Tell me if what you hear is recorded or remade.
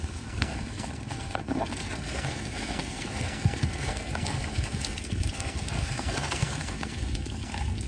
remade